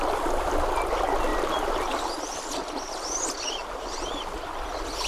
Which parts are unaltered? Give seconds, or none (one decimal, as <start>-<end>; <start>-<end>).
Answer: 0.0-1.3; 2.0-5.1